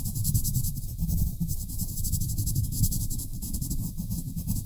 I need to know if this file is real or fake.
fake